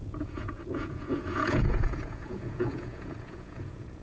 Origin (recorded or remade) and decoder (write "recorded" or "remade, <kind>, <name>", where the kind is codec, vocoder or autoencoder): remade, vocoder, Vocos